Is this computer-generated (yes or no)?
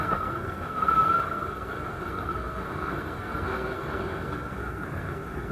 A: yes